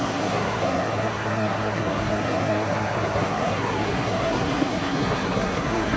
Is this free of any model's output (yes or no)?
no